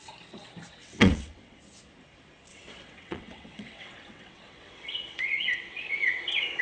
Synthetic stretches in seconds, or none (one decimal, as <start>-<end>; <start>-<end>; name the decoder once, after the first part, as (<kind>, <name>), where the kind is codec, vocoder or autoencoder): 0.8-1.6 (vocoder, WaveNeXt); 2.5-6.6